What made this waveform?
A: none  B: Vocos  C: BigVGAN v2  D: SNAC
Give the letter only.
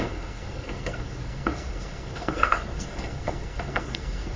D